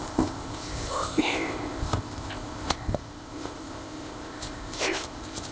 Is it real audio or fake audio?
fake